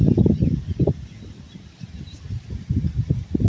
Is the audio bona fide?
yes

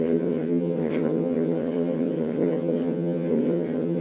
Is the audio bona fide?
no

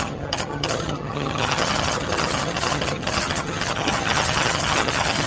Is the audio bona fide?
no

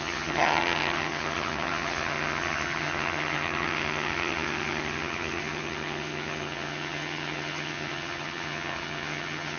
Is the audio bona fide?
no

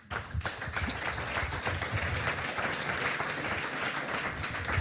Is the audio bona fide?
yes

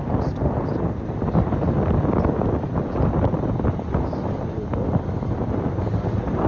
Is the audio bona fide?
yes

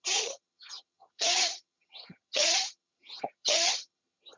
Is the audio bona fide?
no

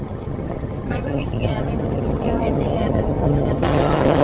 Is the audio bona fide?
no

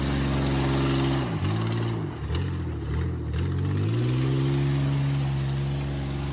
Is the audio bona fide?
yes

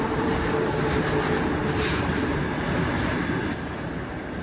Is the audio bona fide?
yes